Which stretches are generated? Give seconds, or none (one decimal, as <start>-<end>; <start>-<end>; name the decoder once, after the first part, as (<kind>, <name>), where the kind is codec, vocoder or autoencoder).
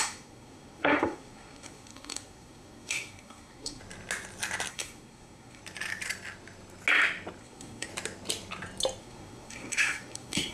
0.0-3.8 (codec, SNAC); 4.7-5.6; 7.4-7.9; 9.0-10.5